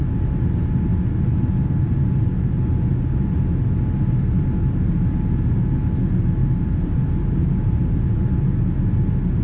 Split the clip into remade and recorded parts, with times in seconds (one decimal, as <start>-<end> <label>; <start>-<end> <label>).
0.0-6.4 recorded; 6.4-8.0 remade; 8.0-9.4 recorded